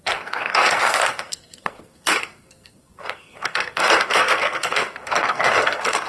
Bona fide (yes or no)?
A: no